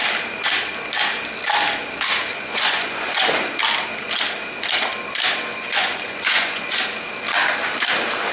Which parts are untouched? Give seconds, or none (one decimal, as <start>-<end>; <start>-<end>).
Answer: 0.0-2.3; 3.5-5.5; 6.8-8.3